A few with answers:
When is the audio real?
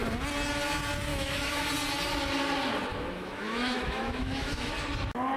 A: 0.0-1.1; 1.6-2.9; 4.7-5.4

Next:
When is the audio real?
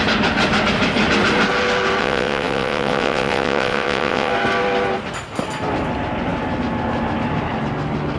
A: 0.0-2.0; 4.3-8.2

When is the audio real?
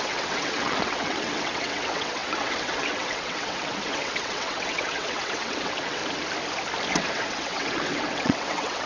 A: 6.0-6.9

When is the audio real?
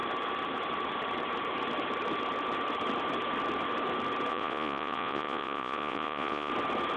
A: 0.0-4.3; 6.5-7.0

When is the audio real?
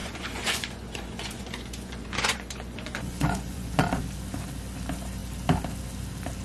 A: 3.8-6.4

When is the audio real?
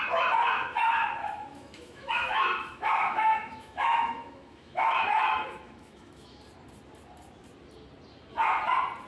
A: 0.0-1.2; 6.4-9.1